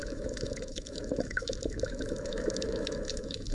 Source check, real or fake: fake